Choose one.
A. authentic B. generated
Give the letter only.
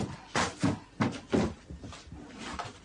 A